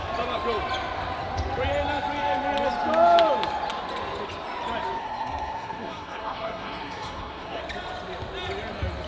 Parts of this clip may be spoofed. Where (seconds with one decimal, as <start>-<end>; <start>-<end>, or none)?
5.0-7.6

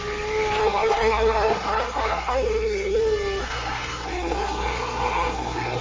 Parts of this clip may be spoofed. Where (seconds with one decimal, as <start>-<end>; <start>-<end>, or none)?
0.6-3.0; 3.4-5.8

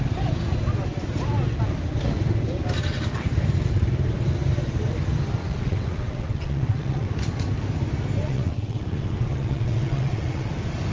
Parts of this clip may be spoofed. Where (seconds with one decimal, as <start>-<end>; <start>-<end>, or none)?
5.4-7.1; 8.2-10.5